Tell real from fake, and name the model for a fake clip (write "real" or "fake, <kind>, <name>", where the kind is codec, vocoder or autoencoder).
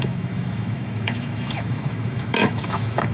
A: fake, autoencoder, DAC-VAE